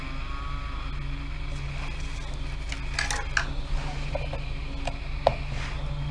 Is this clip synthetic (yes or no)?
no